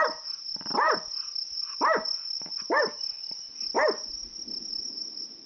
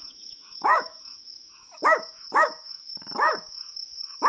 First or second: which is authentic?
first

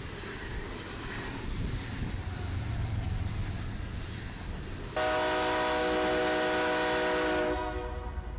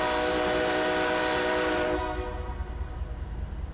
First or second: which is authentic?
first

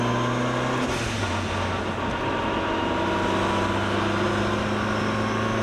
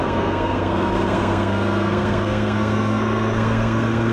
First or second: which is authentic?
first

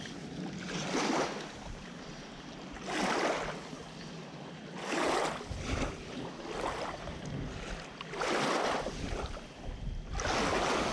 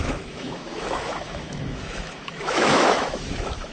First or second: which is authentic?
first